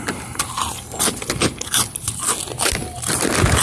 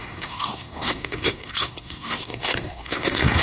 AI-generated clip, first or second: second